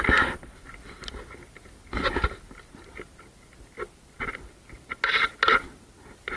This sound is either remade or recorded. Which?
recorded